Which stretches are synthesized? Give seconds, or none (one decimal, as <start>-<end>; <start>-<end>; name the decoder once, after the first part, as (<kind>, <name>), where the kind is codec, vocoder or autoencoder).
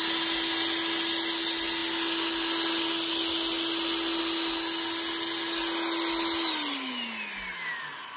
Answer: none